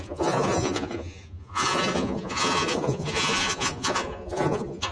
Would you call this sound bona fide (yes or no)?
no